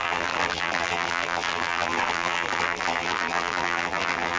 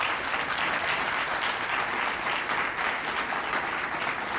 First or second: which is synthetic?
first